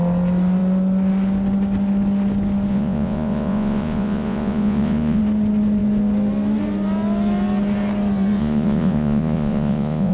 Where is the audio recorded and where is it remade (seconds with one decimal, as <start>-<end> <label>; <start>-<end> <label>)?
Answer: 0.0-2.7 recorded; 2.7-5.2 remade; 5.2-8.4 recorded; 8.4-10.1 remade